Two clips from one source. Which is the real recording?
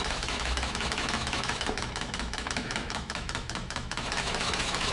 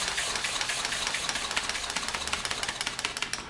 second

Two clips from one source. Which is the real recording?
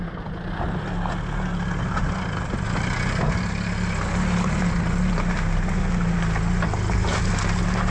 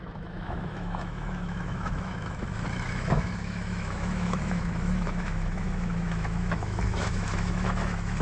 first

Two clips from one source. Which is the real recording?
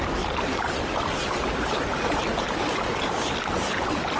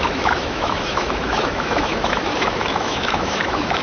first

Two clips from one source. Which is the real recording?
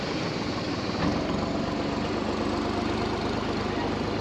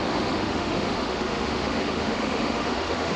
first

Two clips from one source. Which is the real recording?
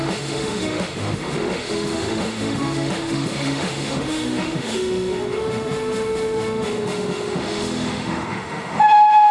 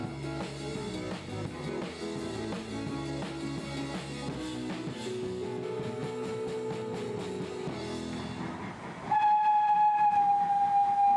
second